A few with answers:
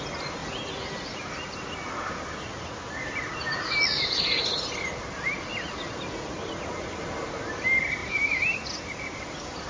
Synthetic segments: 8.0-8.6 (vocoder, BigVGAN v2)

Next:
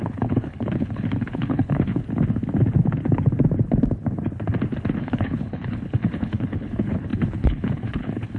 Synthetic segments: 0.0-2.0 (codec, HILCodec); 5.0-8.4